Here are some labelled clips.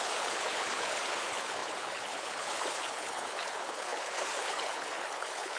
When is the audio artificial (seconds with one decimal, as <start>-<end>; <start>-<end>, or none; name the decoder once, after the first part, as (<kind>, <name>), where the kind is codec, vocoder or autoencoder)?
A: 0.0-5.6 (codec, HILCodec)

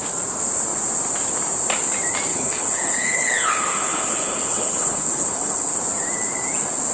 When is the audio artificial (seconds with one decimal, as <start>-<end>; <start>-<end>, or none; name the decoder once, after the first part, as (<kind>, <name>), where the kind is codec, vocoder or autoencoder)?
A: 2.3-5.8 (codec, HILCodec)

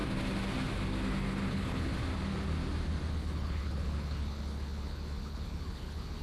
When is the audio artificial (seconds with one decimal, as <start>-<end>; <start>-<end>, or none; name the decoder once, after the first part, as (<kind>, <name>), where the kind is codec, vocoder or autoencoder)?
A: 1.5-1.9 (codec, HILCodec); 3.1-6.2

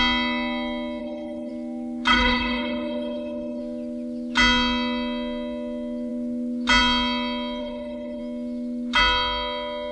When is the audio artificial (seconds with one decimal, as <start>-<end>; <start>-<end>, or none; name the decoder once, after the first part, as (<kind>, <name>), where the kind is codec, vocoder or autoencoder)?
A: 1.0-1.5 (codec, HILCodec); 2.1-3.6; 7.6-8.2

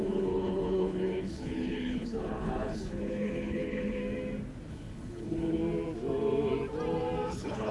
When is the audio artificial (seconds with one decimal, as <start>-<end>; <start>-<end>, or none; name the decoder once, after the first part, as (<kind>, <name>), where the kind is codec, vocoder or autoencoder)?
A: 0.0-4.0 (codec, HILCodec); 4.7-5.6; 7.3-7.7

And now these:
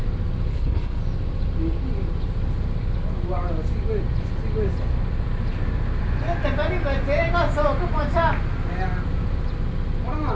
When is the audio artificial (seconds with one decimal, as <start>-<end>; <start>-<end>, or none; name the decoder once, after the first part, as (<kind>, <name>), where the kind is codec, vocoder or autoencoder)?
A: 0.5-1.0 (codec, HILCodec)

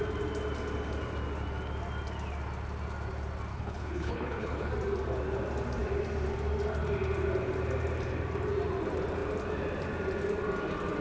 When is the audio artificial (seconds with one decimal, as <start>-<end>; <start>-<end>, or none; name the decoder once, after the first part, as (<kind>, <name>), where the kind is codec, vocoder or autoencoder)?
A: 3.5-4.7 (codec, HILCodec)

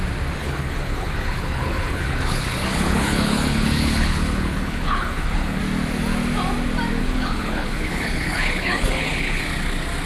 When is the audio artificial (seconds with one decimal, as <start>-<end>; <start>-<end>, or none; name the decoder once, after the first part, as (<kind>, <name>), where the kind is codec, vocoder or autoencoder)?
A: 0.4-5.6 (codec, HILCodec); 7.0-9.4